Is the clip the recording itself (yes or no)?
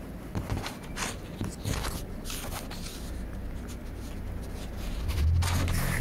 yes